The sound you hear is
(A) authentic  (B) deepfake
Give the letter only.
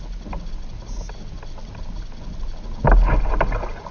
A